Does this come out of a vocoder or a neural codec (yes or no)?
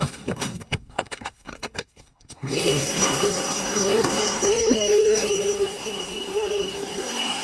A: yes